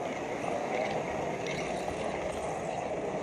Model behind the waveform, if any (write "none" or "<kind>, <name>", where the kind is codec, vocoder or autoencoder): none